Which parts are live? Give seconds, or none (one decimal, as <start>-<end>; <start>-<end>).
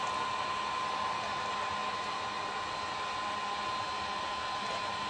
0.0-5.1